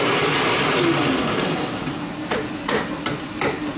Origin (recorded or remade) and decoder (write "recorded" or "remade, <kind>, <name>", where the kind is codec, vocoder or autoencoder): recorded